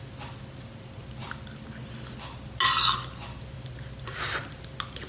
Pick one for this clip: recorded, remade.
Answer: recorded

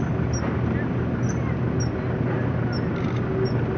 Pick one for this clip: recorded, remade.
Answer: recorded